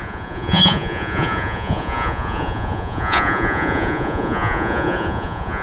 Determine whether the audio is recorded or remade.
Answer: remade